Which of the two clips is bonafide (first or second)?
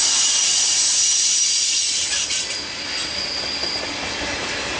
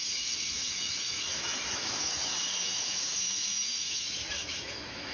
first